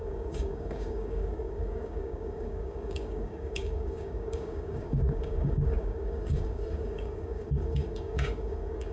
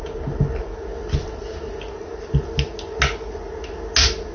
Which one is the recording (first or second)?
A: second